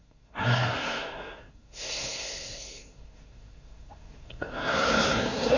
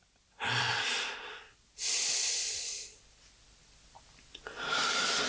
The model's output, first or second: first